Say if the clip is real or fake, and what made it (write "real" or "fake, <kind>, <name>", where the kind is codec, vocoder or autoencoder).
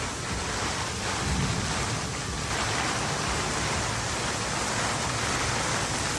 real